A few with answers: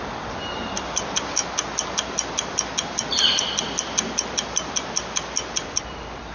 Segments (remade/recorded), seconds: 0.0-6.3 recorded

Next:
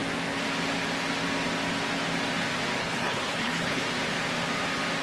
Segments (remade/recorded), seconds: 0.0-2.8 recorded; 2.8-3.8 remade; 3.8-5.0 recorded

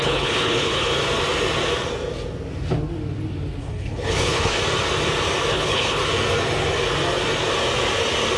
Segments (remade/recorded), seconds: 0.0-0.9 remade; 0.9-3.6 recorded; 3.6-4.6 remade; 4.6-5.5 recorded; 5.5-6.0 remade; 6.0-8.4 recorded